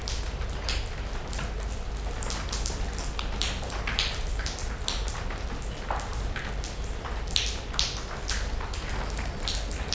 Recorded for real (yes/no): yes